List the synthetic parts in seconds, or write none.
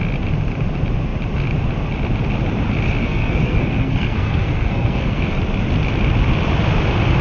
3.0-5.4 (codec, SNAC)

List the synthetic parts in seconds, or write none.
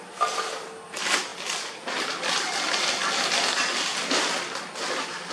none